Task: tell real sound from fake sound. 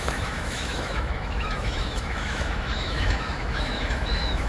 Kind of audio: fake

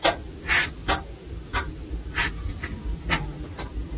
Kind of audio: real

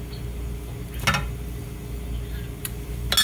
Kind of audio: real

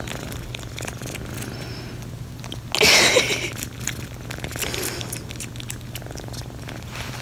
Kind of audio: real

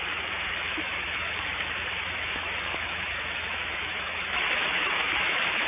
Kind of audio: fake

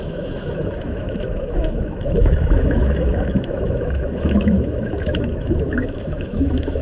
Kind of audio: fake